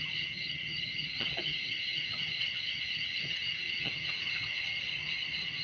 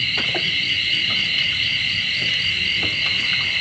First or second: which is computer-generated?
first